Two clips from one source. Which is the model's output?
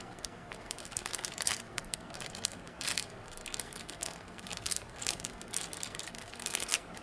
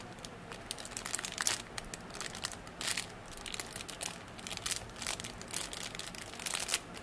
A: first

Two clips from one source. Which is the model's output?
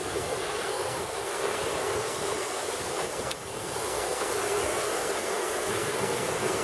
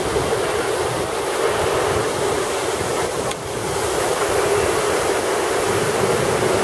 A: first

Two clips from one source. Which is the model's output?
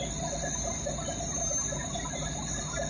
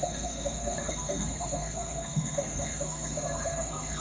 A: second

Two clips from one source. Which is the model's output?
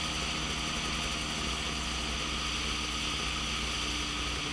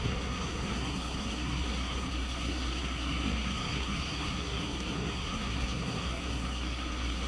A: second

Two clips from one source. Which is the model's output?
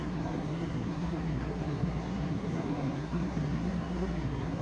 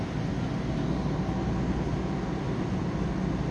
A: first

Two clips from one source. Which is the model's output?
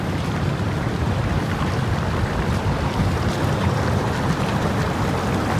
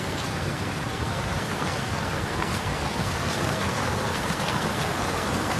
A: second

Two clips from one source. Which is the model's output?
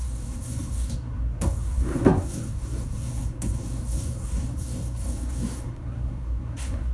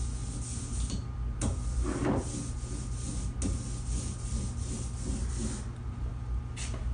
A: first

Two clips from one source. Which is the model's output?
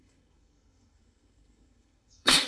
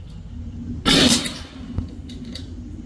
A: first